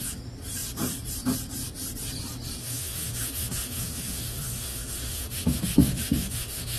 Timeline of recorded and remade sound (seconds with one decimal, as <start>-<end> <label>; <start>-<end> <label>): 0.0-2.6 recorded; 2.6-6.8 remade